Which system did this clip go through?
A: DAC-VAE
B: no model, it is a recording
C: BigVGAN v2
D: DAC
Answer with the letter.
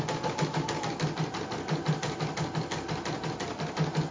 B